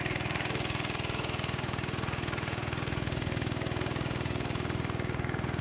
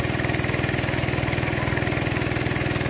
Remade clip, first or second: first